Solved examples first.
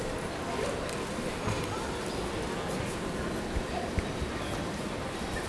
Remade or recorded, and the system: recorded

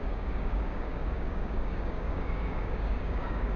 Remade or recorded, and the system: remade, codec, DAC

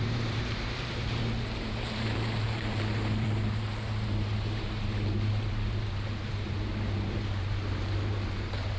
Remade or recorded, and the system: remade, vocoder, BigVGAN v2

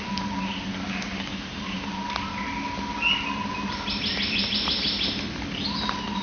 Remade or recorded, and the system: recorded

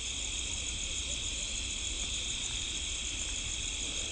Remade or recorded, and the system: recorded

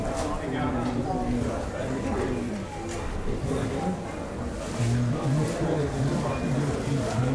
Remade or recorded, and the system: recorded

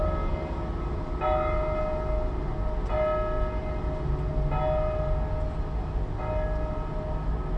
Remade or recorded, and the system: recorded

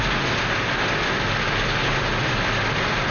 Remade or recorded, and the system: recorded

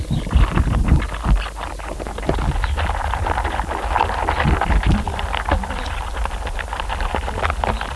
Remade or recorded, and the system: recorded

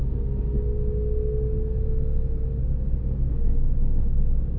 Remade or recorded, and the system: recorded